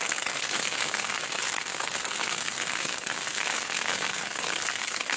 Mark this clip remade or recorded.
remade